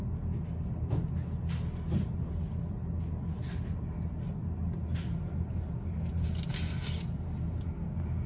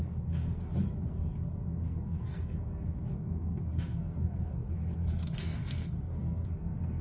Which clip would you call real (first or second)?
first